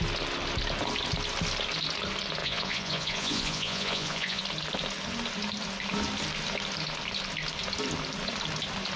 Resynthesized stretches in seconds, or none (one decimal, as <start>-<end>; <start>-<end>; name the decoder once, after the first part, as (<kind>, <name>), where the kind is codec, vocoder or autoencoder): 2.4-4.4 (vocoder, Vocos)